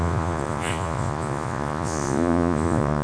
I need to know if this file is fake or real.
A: fake